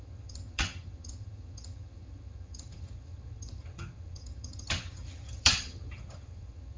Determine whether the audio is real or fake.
fake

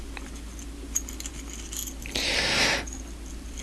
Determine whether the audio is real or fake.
real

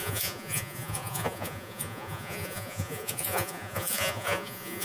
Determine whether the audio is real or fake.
fake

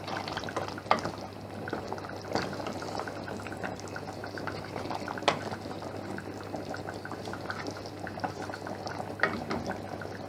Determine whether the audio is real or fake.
real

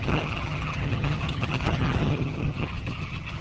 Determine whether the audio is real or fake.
fake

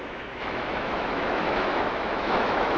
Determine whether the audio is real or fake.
fake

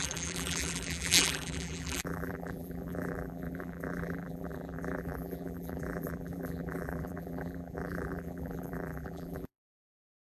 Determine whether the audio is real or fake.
fake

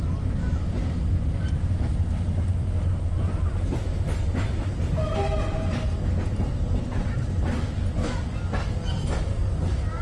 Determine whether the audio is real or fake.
real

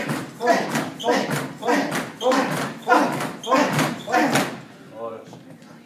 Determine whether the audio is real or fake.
real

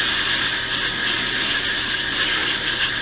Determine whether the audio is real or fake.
real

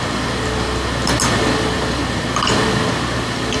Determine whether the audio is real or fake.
real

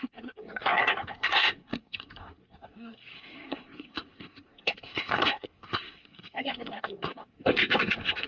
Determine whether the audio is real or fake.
fake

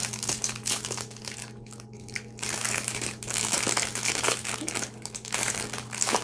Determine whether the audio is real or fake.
fake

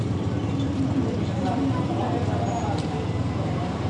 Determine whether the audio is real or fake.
fake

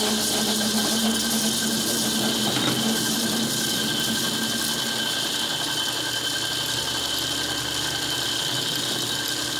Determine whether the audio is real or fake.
real